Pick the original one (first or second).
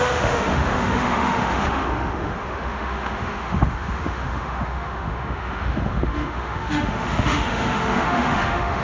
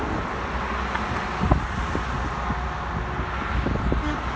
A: second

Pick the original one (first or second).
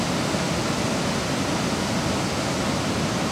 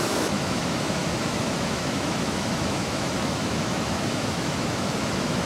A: first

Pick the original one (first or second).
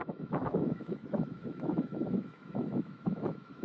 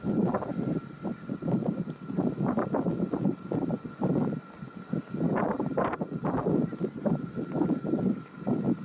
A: second